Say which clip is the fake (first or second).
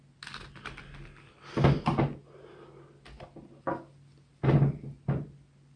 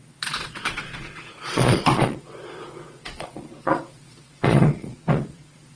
second